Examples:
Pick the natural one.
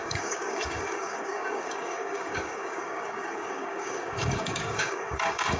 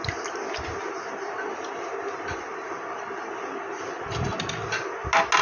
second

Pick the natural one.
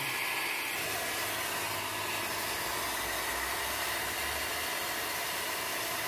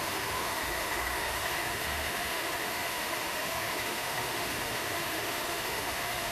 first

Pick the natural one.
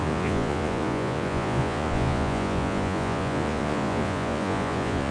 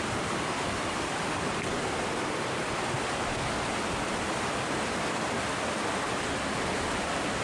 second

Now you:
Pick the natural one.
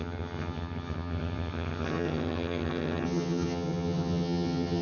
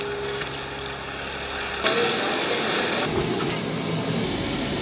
second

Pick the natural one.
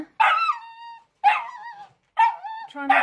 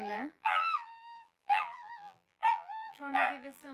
first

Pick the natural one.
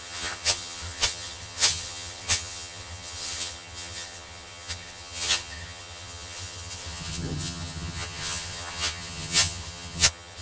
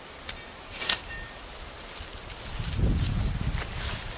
second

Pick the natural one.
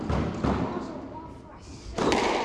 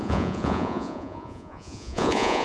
first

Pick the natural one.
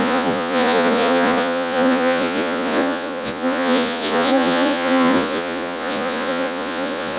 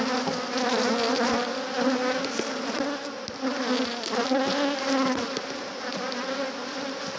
second